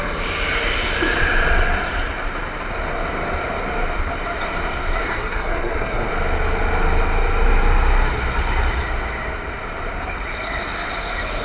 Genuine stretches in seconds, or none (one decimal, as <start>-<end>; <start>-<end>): 0.0-5.0; 6.1-11.4